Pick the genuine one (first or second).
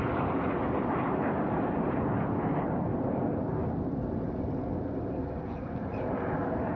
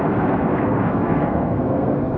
first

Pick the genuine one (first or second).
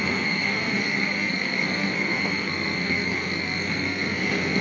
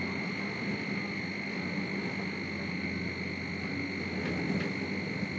second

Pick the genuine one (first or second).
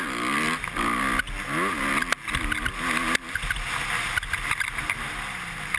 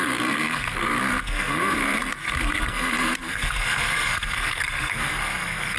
first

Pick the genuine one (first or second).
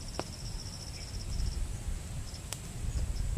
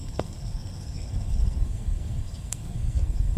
first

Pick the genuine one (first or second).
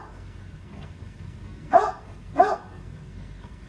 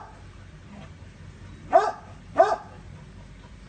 second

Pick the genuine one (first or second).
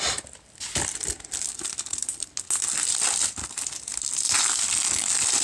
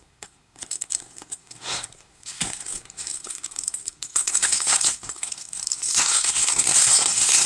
first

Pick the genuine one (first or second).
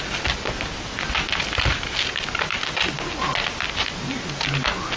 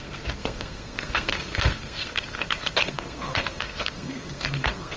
first